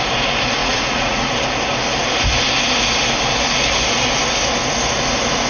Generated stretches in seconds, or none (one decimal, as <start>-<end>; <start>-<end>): 0.6-1.3